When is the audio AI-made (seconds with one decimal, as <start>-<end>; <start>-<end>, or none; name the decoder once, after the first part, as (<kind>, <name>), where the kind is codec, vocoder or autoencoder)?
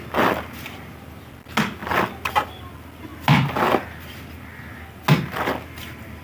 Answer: none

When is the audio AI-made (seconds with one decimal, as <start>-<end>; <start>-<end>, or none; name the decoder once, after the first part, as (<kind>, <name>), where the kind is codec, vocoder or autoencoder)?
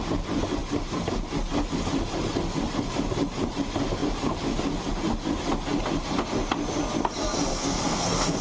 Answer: 7.5-8.4 (codec, SNAC)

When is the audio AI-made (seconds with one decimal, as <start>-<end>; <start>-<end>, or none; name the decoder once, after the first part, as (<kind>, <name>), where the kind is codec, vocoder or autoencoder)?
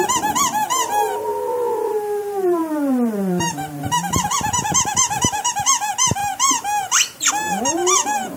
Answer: 0.0-8.4 (vocoder, BigVGAN v2)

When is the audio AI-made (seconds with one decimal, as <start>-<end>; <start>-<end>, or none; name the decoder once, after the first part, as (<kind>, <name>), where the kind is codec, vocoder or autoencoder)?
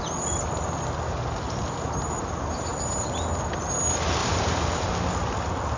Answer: 4.2-4.9 (vocoder, BigVGAN v2)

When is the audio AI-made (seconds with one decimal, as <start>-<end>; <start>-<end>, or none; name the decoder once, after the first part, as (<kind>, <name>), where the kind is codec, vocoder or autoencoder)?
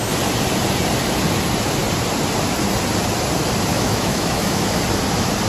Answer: 3.7-4.8 (autoencoder, DAC-VAE)